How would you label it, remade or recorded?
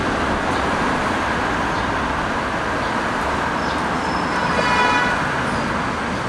recorded